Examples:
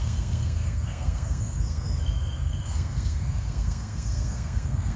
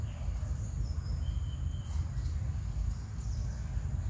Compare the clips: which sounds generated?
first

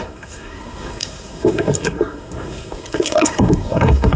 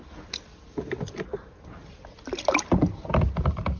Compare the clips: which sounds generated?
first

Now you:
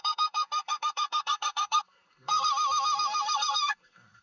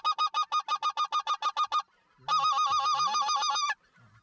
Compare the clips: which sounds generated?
first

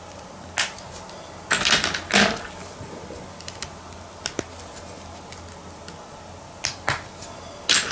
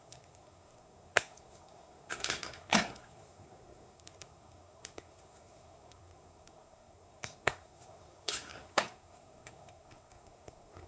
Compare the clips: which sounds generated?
second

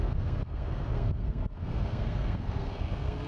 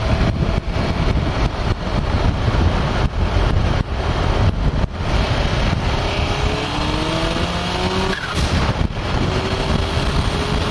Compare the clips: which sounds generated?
first